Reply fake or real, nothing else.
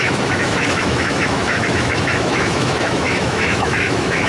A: fake